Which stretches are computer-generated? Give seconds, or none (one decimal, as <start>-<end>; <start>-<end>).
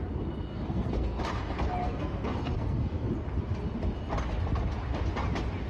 0.5-1.2; 1.8-3.1